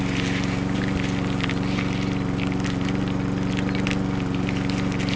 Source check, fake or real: real